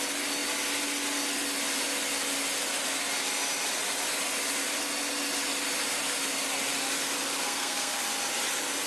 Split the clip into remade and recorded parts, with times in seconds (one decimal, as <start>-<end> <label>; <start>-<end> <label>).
0.0-7.4 recorded; 7.4-8.0 remade; 8.0-8.9 recorded